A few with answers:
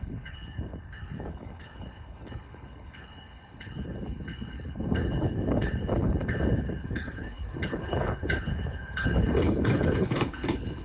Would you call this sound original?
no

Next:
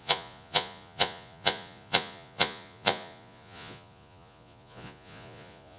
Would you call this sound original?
no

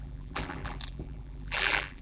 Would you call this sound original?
no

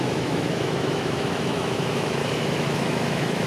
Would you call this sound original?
no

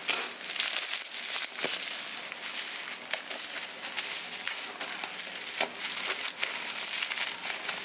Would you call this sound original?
yes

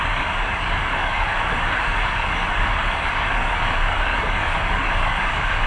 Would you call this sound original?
no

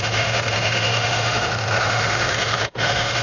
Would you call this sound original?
no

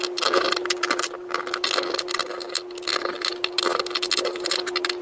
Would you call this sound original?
yes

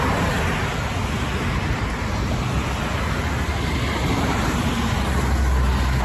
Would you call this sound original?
yes